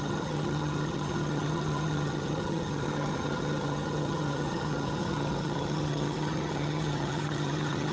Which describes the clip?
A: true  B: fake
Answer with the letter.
B